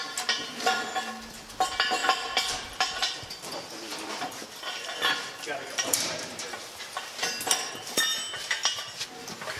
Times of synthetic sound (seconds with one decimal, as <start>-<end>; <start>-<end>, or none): 2.0-6.7